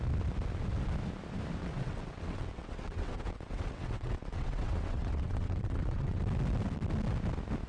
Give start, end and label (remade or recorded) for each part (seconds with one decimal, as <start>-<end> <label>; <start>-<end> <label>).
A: 0.0-1.6 recorded; 1.6-6.2 remade; 6.2-7.7 recorded